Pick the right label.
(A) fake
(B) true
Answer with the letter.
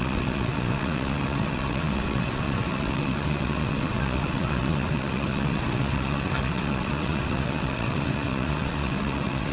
A